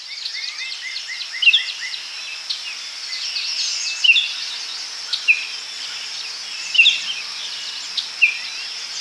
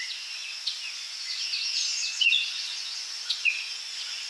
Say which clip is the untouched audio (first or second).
first